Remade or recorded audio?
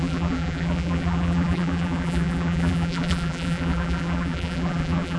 remade